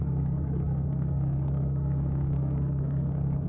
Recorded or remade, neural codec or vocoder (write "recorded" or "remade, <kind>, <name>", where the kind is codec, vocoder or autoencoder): remade, codec, SNAC